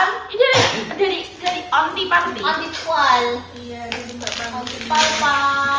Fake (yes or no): no